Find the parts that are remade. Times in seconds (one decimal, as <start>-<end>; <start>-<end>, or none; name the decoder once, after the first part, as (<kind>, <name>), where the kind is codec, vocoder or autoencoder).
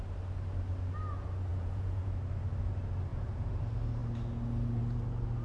1.5-2.1 (vocoder, Vocos); 3.1-3.6